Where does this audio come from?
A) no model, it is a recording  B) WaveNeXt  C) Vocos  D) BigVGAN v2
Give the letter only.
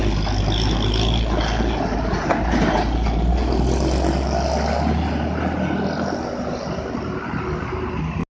A